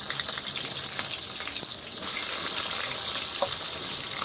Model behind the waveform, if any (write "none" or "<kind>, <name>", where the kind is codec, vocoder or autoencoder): none